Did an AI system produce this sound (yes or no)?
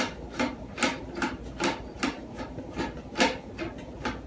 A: no